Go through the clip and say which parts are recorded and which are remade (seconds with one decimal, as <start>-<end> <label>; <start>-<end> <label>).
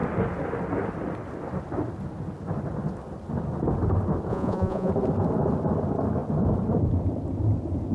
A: 0.0-4.3 recorded; 4.3-4.9 remade; 4.9-7.9 recorded